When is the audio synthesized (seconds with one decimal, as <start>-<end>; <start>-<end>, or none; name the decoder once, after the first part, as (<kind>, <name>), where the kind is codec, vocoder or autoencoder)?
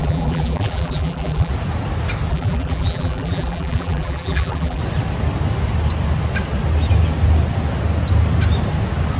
0.0-1.5 (vocoder, BigVGAN v2); 2.3-4.8